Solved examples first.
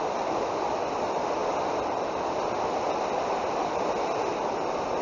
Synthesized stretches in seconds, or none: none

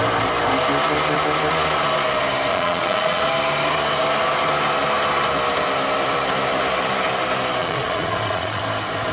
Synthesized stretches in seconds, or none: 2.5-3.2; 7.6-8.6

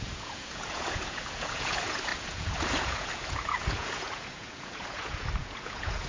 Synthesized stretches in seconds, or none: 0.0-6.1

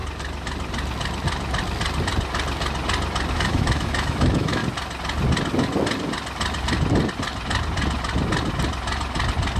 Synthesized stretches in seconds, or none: 3.3-4.6

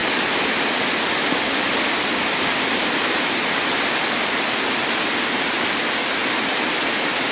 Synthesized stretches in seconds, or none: none